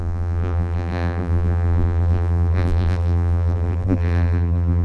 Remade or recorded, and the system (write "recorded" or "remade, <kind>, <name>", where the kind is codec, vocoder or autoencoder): remade, vocoder, BigVGAN v2